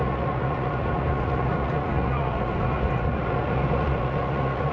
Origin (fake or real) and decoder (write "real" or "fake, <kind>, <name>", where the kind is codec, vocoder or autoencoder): fake, vocoder, Vocos